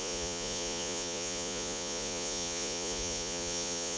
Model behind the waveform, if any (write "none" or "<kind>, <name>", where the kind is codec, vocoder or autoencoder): vocoder, Vocos